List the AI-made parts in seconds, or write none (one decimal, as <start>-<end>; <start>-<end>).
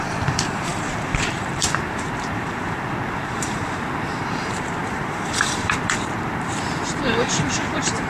0.0-3.6; 4.2-8.1